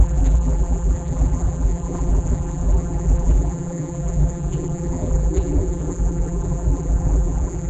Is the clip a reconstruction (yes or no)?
yes